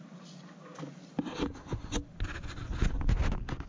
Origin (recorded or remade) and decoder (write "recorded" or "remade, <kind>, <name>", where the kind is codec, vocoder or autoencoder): recorded